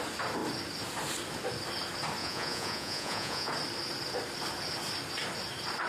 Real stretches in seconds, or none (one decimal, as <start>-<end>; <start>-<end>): 0.0-2.2; 3.5-5.9